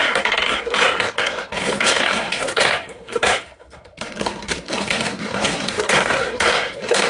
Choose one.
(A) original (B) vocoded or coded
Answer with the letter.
B